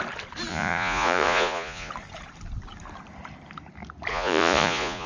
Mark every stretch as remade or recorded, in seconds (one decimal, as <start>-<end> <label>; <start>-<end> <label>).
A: 0.0-0.5 recorded; 0.5-1.9 remade; 1.9-4.1 recorded; 4.1-5.1 remade